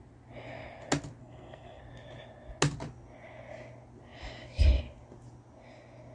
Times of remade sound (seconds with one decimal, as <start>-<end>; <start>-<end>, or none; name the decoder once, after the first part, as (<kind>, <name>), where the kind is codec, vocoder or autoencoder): 1.2-1.8 (codec, SNAC)